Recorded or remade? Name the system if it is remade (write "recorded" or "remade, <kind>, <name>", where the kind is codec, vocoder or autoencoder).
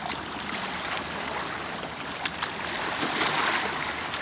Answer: recorded